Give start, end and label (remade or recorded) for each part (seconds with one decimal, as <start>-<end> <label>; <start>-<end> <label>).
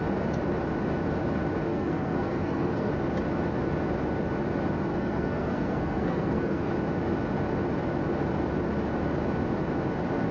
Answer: 0.0-1.7 recorded; 1.7-2.9 remade; 2.9-4.9 recorded; 4.9-6.7 remade; 6.7-10.3 recorded